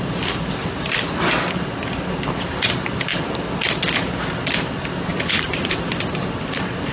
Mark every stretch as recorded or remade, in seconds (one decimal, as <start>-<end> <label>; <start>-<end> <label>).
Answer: 0.0-5.1 recorded; 5.1-5.8 remade; 5.8-6.9 recorded